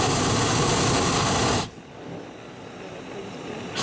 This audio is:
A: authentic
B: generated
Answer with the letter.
A